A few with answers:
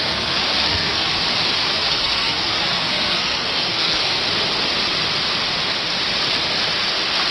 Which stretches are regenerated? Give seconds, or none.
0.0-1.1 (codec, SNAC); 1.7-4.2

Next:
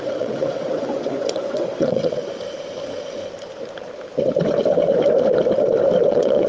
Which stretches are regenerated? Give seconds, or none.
0.0-2.2 (vocoder, WaveNeXt); 6.1-6.5

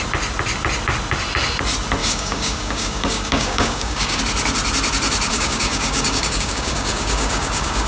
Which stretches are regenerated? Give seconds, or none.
2.0-4.2 (codec, DAC); 5.3-7.9

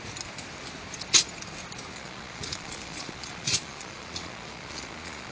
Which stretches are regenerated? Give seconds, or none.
1.9-5.3 (vocoder, Vocos)

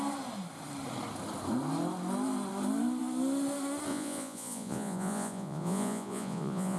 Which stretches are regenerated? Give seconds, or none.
3.9-6.8 (vocoder, Vocos)